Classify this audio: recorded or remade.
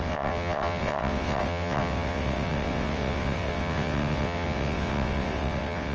remade